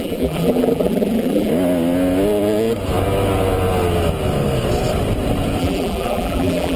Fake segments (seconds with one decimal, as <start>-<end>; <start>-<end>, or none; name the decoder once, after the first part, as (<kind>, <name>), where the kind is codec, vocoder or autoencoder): 0.0-1.5 (vocoder, BigVGAN v2); 5.6-6.8